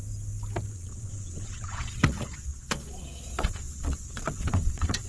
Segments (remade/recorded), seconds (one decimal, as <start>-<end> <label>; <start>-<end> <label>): 0.0-0.7 recorded; 0.7-5.1 remade